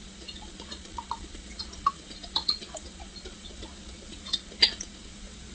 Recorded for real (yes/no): no